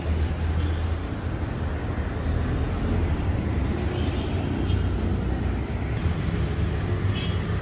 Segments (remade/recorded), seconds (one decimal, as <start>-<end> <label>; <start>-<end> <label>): 0.0-7.6 recorded